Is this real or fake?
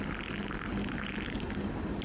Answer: real